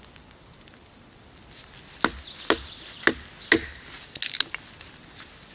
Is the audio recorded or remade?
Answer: recorded